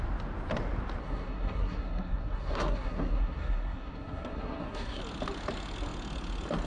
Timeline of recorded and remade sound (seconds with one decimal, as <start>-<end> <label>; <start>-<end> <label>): 0.0-1.0 recorded; 1.0-5.0 remade; 5.0-6.7 recorded